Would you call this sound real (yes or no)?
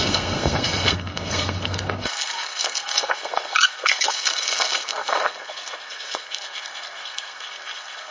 no